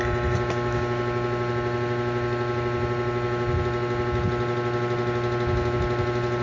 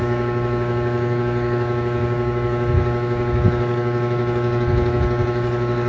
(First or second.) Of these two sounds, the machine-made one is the second